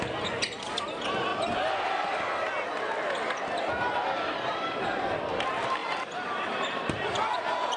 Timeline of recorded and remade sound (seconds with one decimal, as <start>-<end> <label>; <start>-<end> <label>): 0.0-5.8 recorded; 5.8-7.0 remade; 7.0-7.8 recorded